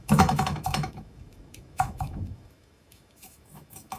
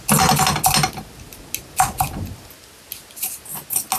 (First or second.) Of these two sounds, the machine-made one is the first